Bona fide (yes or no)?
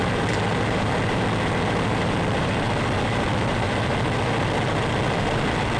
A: no